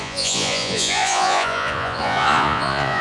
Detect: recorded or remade remade